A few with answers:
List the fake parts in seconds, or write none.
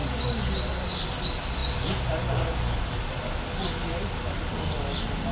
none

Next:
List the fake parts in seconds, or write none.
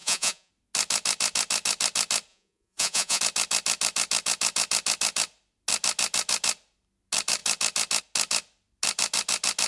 0.0-0.5 (vocoder, Vocos); 2.3-3.2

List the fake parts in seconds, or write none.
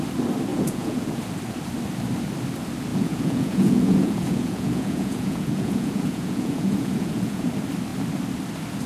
0.5-1.2 (vocoder, Vocos); 2.9-7.5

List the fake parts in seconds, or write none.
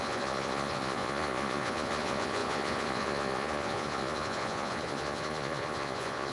0.0-6.3 (vocoder, Vocos)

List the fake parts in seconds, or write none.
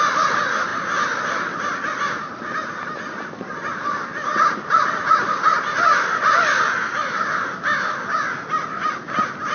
none